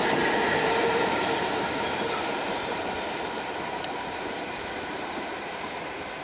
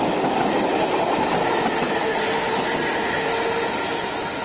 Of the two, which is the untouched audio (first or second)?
second